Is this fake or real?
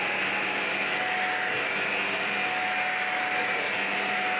real